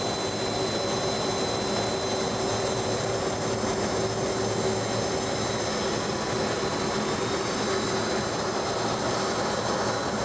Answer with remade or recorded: recorded